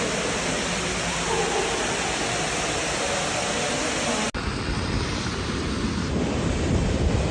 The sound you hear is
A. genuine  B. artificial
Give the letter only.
A